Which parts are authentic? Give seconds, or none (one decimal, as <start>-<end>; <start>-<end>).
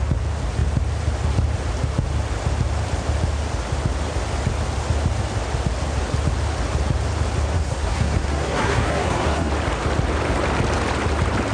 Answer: 0.0-7.5; 9.5-11.5